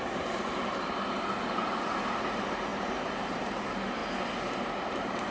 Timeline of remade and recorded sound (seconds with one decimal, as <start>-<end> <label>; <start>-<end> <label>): 0.0-4.0 remade; 4.0-4.7 recorded; 4.7-5.3 remade